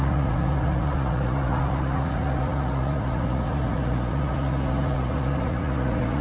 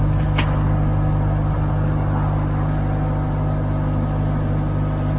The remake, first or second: first